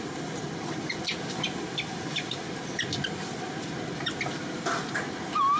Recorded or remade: recorded